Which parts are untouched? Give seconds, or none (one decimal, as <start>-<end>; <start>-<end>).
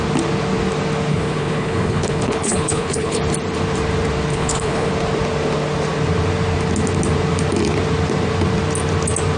0.0-1.1; 3.2-4.3; 4.9-9.4